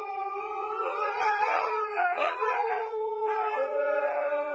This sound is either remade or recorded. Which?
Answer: remade